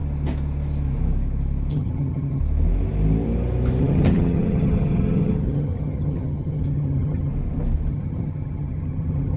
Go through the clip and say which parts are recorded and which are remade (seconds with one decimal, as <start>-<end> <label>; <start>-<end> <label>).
0.0-1.7 recorded; 1.7-2.4 remade; 2.4-3.8 recorded; 3.8-7.3 remade; 7.3-7.9 recorded; 7.9-9.4 remade